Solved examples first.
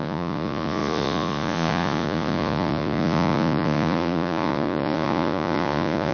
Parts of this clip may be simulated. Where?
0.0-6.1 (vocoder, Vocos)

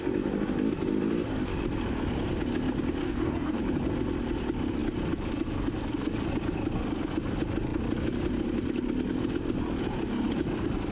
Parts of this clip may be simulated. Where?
3.0-3.6 (codec, DAC)